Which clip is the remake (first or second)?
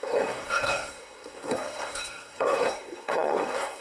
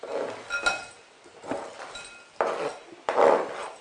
first